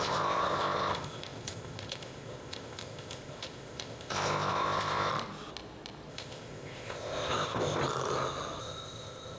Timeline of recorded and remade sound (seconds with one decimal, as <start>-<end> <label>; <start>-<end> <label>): 0.0-5.1 remade; 5.1-6.1 recorded; 6.1-7.8 remade; 7.8-8.6 recorded; 8.6-9.4 remade